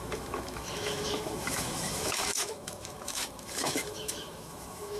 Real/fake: fake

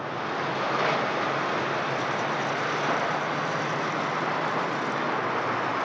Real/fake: real